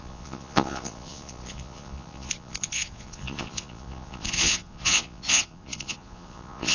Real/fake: fake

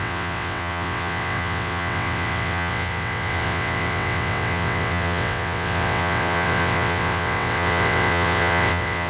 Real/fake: fake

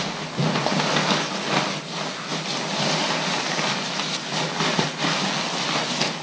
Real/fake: real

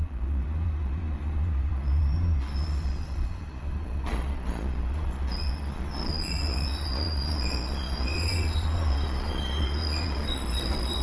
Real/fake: fake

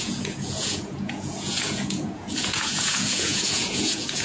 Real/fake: fake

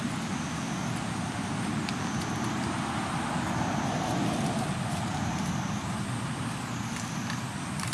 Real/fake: real